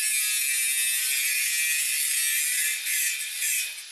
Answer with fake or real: real